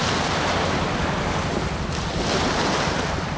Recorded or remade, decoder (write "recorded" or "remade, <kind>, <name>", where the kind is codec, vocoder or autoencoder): recorded